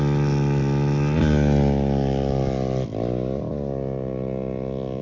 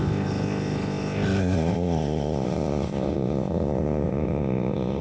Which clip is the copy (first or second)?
second